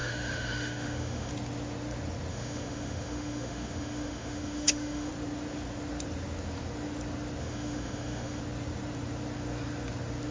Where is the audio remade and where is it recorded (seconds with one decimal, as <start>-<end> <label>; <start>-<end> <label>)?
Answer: 0.0-1.3 remade; 1.3-2.3 recorded; 2.3-5.1 remade; 5.1-7.4 recorded; 7.4-8.4 remade; 8.4-10.3 recorded